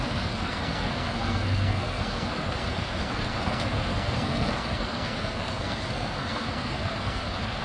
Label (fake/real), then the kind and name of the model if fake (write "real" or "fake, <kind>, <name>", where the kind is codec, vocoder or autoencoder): fake, codec, SNAC